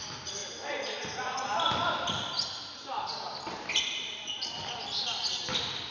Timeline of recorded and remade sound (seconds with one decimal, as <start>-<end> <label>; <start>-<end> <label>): 0.0-5.9 recorded